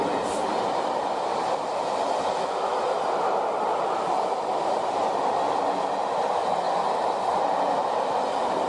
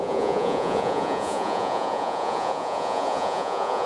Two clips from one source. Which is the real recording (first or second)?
first